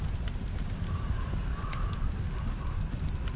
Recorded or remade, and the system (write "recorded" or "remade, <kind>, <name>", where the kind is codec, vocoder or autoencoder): recorded